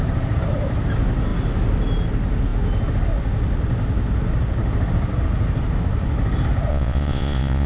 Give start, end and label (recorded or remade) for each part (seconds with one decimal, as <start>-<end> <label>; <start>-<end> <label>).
0.0-6.7 recorded; 6.7-7.7 remade